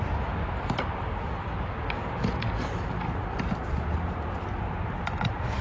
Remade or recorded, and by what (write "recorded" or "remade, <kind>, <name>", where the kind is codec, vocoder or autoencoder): recorded